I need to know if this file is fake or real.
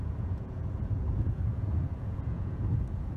fake